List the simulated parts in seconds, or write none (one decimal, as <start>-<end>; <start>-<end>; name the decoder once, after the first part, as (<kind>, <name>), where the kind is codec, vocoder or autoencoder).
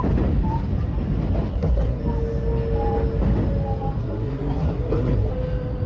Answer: 1.5-2.0 (codec, SNAC); 4.0-5.3